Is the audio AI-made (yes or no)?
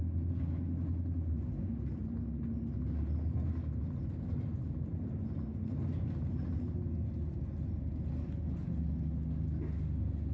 no